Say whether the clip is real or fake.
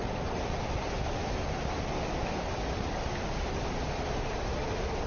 real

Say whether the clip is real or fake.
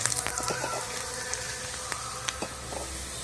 real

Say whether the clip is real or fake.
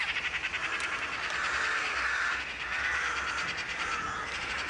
real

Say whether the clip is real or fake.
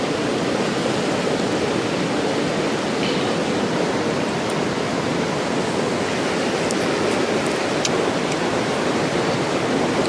real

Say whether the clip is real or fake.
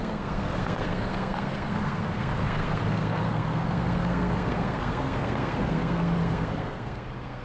fake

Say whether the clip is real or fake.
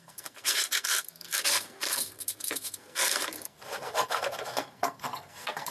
fake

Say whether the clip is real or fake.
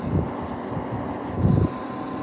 real